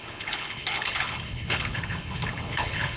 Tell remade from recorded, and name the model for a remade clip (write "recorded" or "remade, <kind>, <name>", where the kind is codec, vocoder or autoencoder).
remade, codec, HILCodec